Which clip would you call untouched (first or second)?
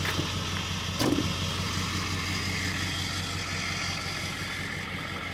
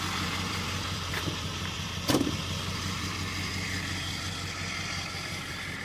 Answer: first